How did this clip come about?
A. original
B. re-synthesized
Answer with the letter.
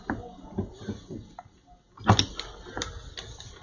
A